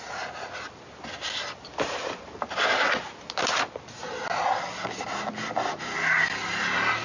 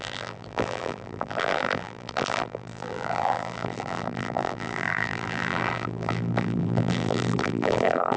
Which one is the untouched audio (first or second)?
first